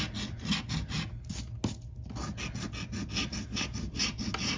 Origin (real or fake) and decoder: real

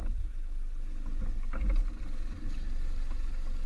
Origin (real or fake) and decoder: real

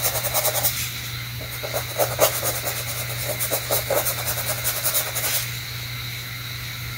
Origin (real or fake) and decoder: real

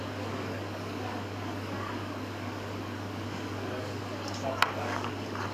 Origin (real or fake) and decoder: fake, codec, DAC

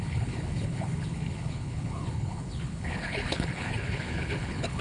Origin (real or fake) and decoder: fake, codec, HILCodec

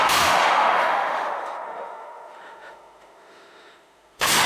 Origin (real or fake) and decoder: fake, autoencoder, DAC-VAE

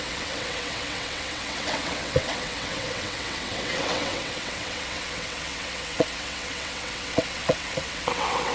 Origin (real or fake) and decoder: fake, vocoder, WaveNeXt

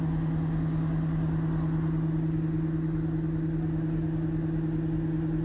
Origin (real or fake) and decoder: real